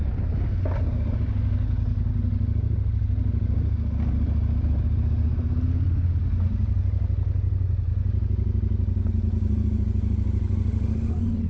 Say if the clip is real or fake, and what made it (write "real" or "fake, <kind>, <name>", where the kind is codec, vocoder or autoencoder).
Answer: real